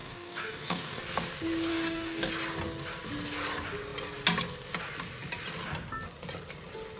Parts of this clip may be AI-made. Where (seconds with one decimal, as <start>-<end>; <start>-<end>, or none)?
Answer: 0.0-1.0; 1.7-2.3